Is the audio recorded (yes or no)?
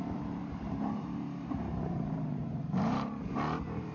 no